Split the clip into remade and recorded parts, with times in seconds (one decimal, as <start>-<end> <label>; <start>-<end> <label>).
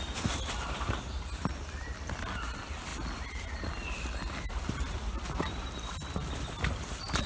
0.0-7.3 remade